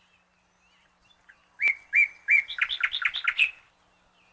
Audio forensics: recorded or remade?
recorded